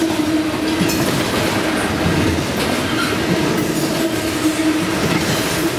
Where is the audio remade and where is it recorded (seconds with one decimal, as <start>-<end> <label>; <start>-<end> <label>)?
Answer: 0.0-5.8 recorded